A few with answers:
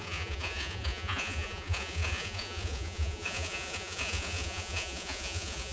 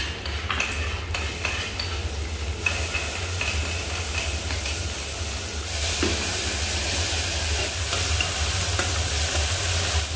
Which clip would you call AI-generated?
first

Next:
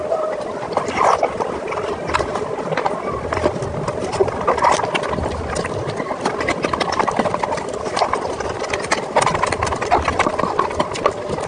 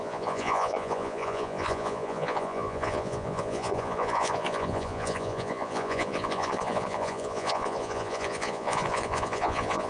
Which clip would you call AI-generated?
second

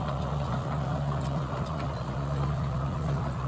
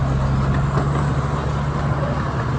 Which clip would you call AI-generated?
first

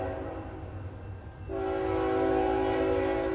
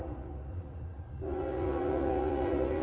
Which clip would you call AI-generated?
second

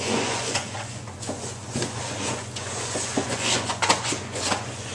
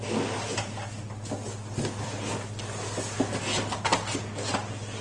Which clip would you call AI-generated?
first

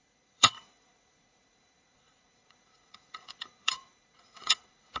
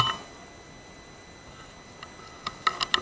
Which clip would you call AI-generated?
first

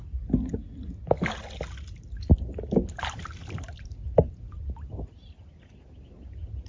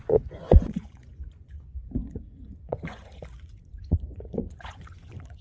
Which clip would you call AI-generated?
second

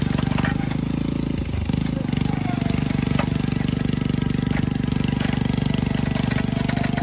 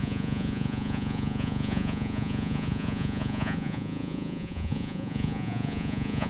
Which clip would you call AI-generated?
second